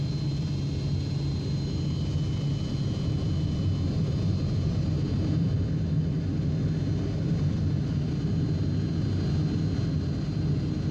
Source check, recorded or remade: recorded